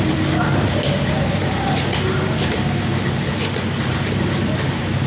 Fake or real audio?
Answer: real